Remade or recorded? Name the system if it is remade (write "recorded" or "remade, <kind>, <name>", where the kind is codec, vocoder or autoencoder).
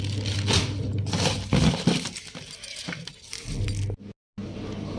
recorded